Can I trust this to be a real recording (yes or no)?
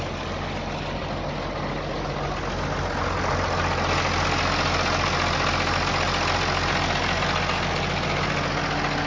yes